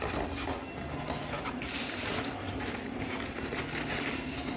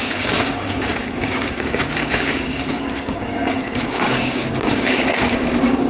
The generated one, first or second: second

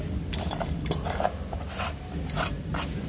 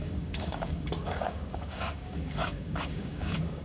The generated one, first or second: second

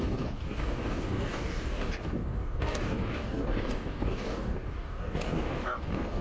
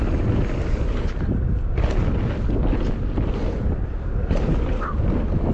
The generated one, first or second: first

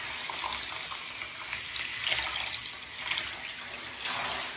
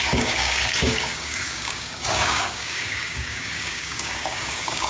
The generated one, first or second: second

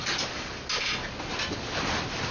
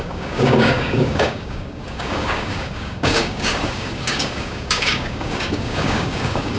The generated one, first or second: second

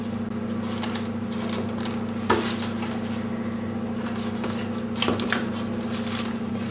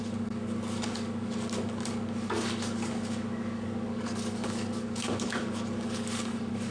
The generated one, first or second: second